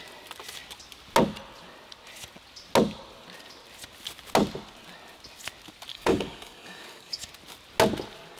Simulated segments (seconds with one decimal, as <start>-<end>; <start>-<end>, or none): 5.9-7.3